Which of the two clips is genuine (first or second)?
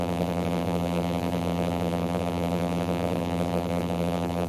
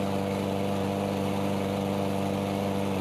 second